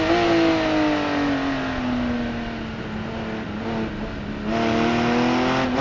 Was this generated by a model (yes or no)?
no